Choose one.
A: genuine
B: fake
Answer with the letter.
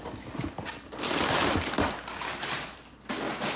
A